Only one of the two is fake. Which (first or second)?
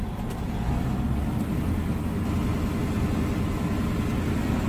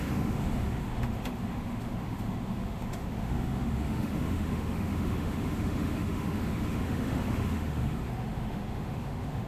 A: second